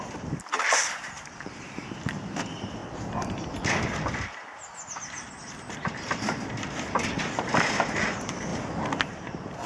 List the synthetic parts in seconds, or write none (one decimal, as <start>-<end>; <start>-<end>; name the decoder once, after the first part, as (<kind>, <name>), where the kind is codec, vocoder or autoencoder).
0.0-2.8 (vocoder, BigVGAN v2); 7.1-8.5; 9.1-9.7